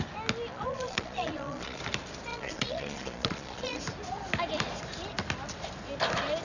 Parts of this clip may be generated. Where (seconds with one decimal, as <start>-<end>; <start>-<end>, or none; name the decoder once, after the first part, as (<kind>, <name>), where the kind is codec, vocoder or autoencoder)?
0.5-1.8 (vocoder, Vocos); 2.3-3.8